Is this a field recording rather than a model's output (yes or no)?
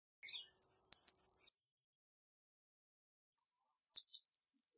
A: yes